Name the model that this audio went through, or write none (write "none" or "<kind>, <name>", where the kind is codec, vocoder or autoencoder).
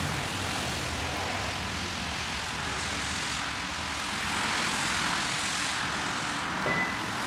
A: none